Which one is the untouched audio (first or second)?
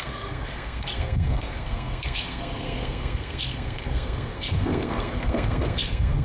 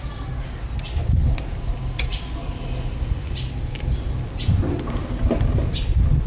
second